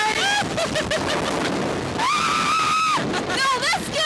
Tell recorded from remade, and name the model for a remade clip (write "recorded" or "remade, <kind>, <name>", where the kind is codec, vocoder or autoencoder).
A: recorded